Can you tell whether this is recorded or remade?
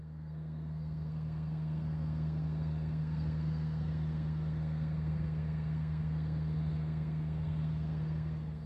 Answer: remade